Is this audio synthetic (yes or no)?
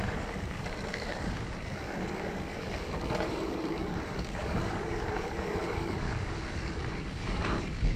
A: yes